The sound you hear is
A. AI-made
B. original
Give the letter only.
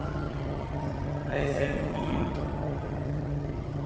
A